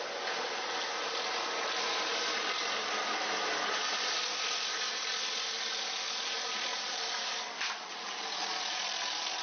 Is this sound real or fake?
real